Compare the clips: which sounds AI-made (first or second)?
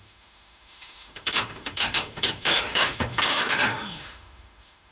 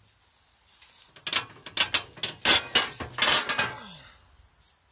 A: first